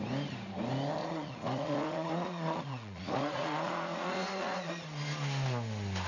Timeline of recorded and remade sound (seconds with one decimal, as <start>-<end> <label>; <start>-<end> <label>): 0.0-1.0 recorded; 1.0-4.7 remade; 4.7-6.1 recorded